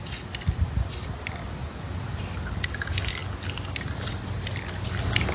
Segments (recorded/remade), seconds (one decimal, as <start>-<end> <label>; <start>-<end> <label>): 0.0-1.6 recorded; 1.6-2.2 remade; 2.2-5.3 recorded